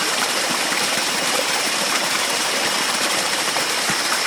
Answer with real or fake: fake